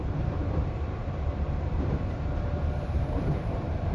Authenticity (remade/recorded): remade